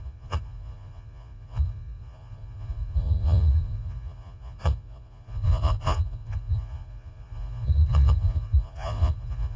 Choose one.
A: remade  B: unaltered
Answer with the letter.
A